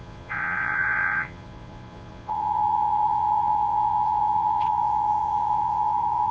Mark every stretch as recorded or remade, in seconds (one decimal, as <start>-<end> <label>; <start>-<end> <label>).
0.0-6.3 remade